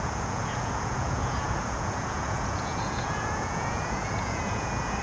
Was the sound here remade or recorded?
remade